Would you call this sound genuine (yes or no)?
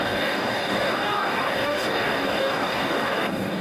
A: no